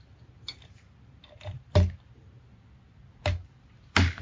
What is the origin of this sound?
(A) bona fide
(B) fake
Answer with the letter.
A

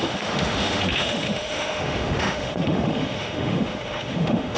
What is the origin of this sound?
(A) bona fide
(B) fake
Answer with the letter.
B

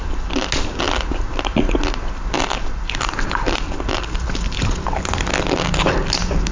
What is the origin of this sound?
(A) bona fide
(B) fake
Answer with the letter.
A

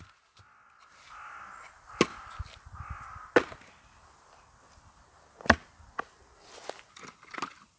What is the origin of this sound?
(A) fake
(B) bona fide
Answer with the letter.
B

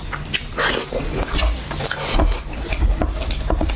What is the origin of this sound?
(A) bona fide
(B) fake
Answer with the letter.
A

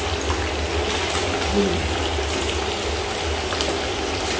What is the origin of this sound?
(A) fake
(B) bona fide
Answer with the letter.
B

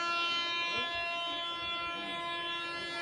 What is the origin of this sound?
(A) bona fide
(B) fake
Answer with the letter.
A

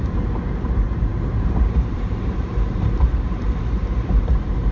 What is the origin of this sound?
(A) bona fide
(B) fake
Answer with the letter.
B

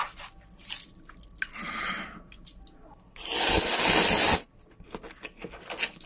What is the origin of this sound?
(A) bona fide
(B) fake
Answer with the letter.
A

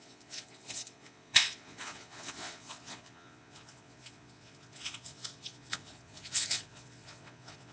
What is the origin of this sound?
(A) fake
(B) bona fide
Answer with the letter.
A